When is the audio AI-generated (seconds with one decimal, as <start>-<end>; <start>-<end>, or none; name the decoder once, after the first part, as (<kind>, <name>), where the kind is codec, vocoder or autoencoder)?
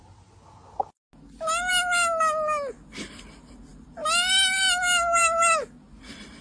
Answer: none